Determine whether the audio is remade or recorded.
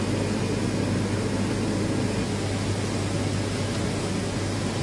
recorded